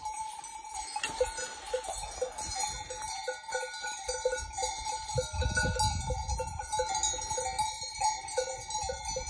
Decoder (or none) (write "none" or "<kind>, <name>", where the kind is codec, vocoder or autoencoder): none